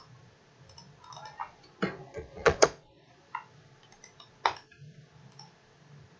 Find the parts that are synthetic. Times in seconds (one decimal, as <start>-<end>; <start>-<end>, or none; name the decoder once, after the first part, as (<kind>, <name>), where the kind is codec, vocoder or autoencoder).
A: 2.1-3.1 (vocoder, Vocos)

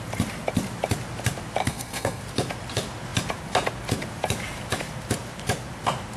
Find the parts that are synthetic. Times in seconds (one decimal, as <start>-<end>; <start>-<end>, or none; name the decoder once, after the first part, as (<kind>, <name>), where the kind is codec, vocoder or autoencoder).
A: 1.6-2.2 (codec, SNAC)

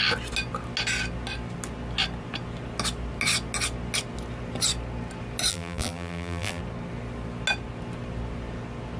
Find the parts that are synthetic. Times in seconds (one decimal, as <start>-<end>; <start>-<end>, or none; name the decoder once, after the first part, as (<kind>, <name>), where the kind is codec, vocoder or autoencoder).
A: 5.5-6.6 (vocoder, BigVGAN v2)

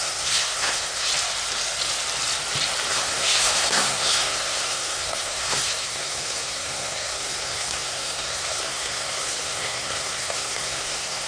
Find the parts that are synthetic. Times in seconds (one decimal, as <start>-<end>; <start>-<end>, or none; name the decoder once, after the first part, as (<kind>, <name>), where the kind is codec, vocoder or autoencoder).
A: 0.0-1.1 (codec, SNAC); 2.9-11.3

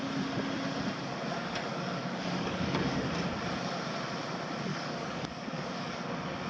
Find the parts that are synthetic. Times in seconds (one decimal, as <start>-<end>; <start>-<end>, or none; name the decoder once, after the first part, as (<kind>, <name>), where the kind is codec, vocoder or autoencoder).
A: 1.4-3.1 (codec, DAC); 4.7-6.0

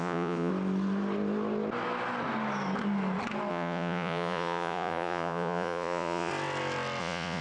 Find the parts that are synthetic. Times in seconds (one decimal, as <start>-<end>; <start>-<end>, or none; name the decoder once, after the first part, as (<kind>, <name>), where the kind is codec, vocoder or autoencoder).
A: 0.0-0.5 (vocoder, Vocos); 3.5-6.3; 7.0-7.4

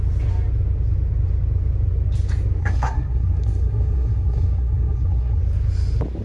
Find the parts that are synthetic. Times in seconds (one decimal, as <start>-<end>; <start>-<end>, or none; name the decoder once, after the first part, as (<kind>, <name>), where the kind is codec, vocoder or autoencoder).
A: 2.6-5.4 (codec, SNAC)

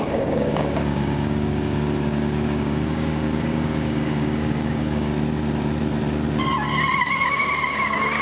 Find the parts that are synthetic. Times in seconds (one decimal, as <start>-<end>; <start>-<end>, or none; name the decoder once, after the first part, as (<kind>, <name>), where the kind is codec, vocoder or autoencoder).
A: 0.0-5.1 (codec, DAC); 7.0-8.2